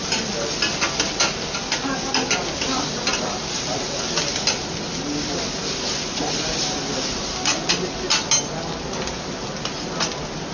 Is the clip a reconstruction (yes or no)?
no